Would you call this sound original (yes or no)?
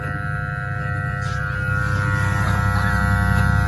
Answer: yes